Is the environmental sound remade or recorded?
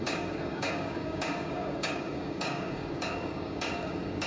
remade